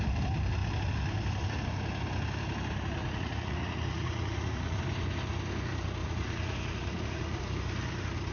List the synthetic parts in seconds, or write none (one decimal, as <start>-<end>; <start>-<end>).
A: 3.0-4.8; 6.0-7.4